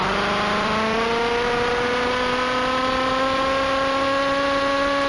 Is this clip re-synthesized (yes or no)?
yes